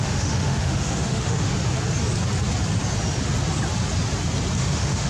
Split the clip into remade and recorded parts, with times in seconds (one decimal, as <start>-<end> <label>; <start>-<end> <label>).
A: 0.0-1.5 remade; 1.5-4.6 recorded; 4.6-5.1 remade